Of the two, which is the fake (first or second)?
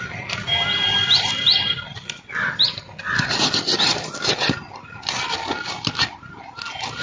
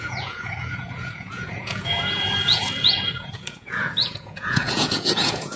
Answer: second